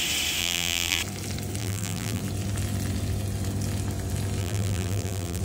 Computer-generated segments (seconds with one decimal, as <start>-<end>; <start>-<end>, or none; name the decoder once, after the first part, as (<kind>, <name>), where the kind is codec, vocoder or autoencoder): 0.4-1.0 (vocoder, BigVGAN v2); 1.6-2.2; 4.4-5.4

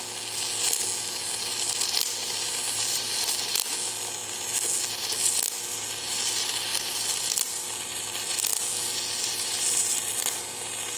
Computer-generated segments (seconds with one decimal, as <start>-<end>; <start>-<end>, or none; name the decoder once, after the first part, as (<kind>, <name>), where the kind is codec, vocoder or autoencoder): 2.2-3.4 (vocoder, BigVGAN v2); 6.7-7.5

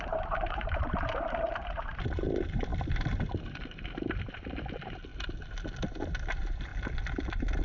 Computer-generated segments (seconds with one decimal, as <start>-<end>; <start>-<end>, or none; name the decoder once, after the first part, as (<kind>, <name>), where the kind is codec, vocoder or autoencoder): 0.0-5.1 (vocoder, BigVGAN v2); 5.9-6.7

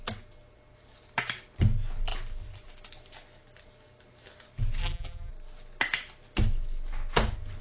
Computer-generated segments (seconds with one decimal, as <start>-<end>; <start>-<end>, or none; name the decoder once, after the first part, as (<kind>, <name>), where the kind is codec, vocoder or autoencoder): 4.8-5.3 (vocoder, BigVGAN v2)

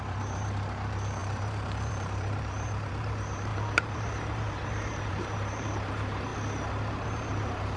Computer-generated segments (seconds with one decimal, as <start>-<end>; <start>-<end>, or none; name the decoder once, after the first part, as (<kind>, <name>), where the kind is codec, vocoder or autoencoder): 0.0-6.3 (vocoder, BigVGAN v2); 6.9-7.8

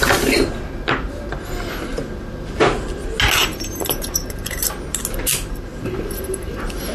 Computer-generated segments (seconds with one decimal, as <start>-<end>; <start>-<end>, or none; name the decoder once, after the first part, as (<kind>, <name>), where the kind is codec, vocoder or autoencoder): 5.7-6.5 (vocoder, BigVGAN v2)

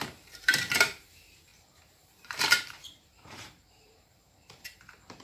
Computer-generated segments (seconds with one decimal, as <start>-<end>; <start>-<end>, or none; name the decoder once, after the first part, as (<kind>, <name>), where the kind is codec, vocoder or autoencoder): 0.0-5.2 (vocoder, BigVGAN v2)